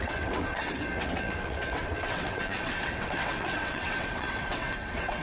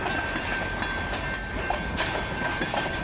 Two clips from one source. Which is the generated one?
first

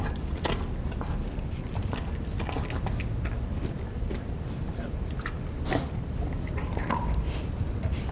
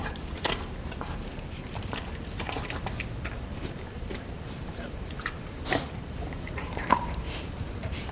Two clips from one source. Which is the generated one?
second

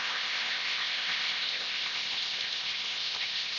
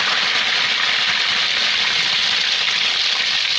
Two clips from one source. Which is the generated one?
first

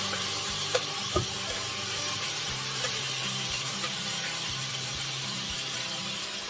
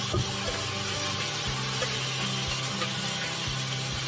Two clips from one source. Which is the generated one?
first